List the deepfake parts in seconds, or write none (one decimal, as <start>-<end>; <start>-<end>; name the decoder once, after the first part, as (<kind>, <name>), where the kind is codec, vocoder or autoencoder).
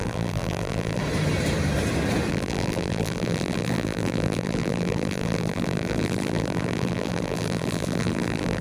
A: 0.0-1.0 (vocoder, BigVGAN v2); 2.3-8.6